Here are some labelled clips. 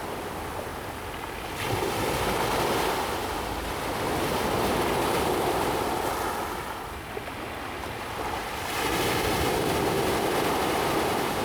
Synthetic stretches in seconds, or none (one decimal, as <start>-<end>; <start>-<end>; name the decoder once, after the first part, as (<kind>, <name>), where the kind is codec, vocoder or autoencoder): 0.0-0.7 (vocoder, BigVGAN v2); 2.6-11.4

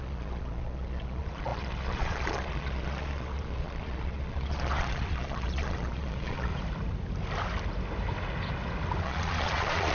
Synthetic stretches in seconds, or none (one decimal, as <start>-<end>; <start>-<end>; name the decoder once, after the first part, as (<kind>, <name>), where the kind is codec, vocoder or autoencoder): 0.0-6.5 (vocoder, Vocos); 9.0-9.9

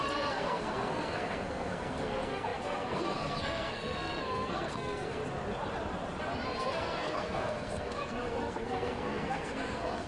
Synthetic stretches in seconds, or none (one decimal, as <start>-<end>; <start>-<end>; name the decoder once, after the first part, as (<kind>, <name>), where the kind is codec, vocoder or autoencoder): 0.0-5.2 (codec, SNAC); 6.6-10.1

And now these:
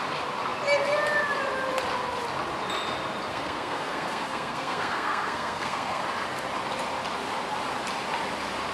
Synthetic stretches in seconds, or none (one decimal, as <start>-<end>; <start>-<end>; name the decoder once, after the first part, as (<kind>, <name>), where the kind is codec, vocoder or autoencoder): 3.3-6.0 (codec, SNAC)

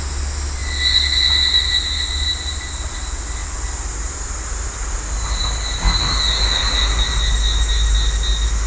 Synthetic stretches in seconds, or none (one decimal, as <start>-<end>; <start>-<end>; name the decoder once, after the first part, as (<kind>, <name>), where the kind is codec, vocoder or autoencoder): none

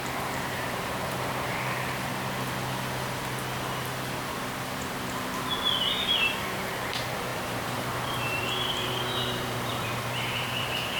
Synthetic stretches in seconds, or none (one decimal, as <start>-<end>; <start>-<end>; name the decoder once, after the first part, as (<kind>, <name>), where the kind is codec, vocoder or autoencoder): 0.0-2.1 (vocoder, BigVGAN v2); 6.4-11.0